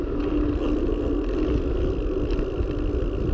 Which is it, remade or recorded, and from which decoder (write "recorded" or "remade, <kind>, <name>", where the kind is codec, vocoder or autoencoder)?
recorded